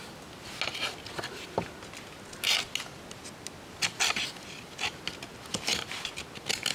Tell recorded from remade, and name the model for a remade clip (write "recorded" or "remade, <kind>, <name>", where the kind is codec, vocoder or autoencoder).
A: recorded